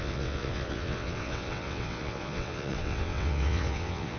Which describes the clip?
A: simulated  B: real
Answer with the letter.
A